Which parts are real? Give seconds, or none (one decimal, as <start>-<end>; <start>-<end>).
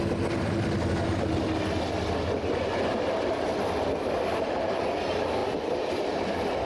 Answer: 0.0-6.7